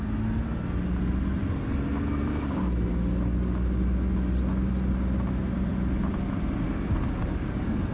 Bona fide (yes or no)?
yes